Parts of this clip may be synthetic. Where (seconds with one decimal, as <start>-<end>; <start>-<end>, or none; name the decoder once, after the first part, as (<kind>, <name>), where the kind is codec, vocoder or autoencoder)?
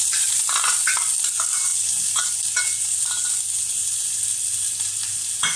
none